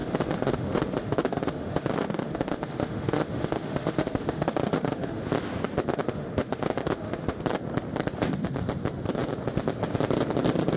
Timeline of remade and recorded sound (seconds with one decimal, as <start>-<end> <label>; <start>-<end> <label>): 0.0-5.2 remade; 5.2-5.9 recorded; 5.9-7.4 remade; 7.4-10.8 recorded